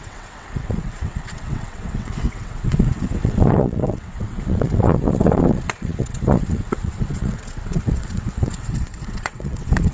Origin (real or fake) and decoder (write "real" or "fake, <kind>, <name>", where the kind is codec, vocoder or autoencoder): fake, vocoder, WaveNeXt